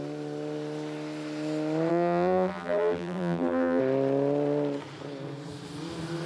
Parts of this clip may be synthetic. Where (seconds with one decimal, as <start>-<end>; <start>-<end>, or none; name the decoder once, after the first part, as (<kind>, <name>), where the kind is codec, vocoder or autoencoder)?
1.9-3.8 (vocoder, BigVGAN v2)